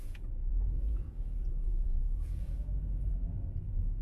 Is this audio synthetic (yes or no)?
yes